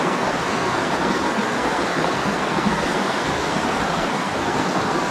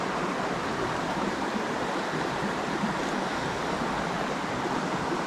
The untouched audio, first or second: second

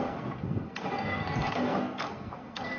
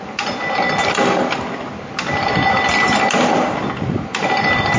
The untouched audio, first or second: second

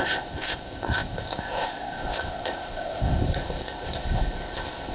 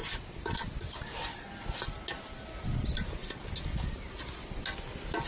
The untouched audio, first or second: second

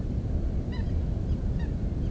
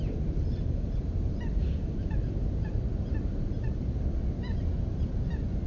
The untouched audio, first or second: second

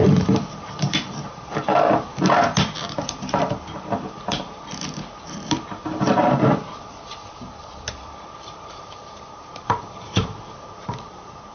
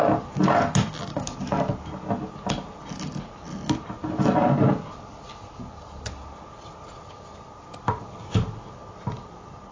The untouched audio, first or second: second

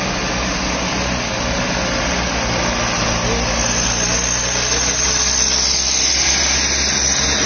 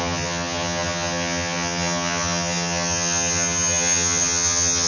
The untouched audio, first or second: first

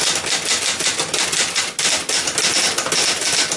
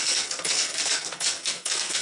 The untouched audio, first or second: first